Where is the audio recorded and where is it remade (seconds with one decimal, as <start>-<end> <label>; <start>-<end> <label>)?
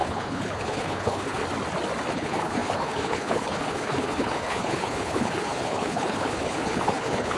0.0-1.4 remade; 1.4-2.1 recorded; 2.1-7.4 remade